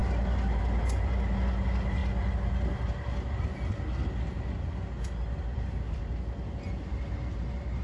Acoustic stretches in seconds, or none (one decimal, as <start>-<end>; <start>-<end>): 0.0-7.8